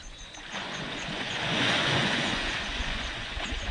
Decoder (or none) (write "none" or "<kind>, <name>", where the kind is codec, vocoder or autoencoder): vocoder, Vocos